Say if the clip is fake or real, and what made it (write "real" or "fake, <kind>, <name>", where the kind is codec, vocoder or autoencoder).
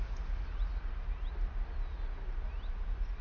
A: real